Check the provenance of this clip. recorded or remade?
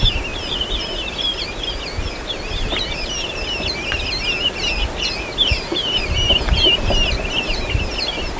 recorded